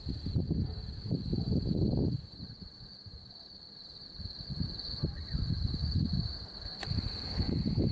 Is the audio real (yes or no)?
yes